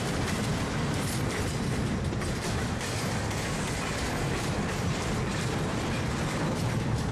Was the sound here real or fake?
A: fake